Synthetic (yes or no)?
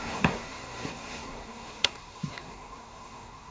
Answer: yes